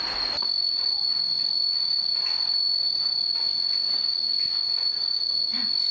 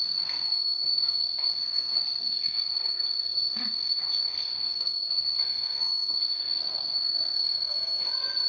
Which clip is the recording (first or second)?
first